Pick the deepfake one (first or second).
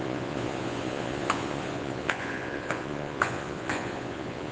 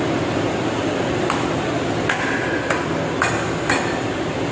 first